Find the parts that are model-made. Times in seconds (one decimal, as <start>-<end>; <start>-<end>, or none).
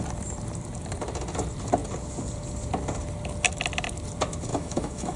4.5-5.2